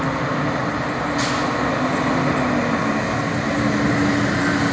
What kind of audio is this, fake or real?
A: real